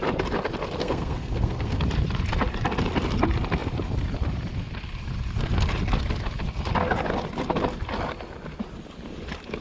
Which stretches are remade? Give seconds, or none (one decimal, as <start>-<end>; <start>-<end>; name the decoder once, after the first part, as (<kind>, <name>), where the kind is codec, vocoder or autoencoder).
0.8-1.8 (codec, SNAC)